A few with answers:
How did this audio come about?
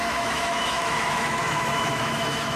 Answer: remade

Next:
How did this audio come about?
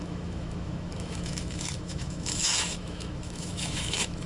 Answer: remade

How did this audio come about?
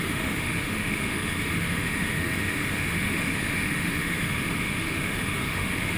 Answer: remade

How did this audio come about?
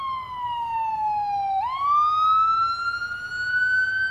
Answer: recorded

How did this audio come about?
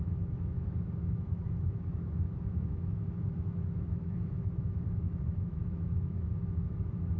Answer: remade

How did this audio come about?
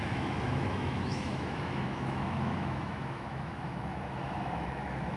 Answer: remade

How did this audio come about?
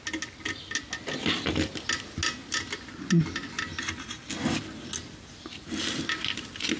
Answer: recorded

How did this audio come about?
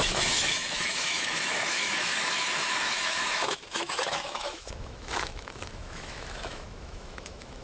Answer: remade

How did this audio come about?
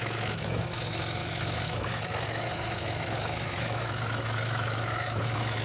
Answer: remade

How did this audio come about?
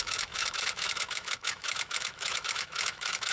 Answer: remade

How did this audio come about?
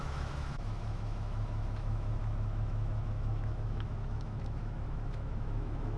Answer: remade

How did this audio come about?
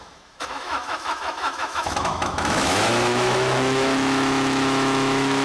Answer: remade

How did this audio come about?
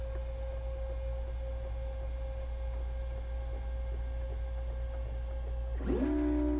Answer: recorded